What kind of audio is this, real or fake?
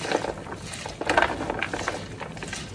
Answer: real